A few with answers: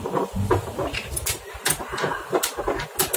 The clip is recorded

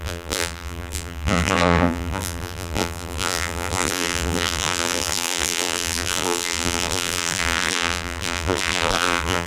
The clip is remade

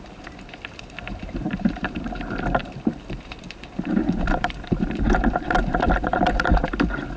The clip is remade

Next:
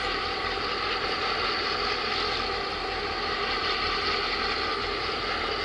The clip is remade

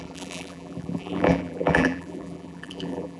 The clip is remade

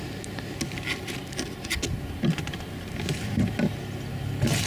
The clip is recorded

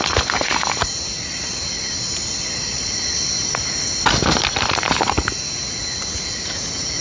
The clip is recorded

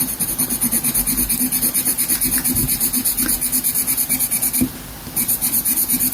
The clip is recorded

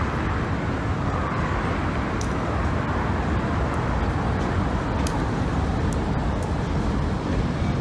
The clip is recorded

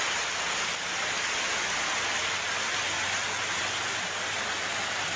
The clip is recorded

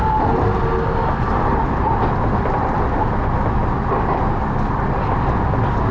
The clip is recorded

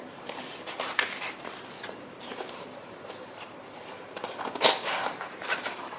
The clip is remade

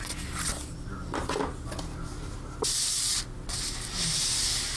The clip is recorded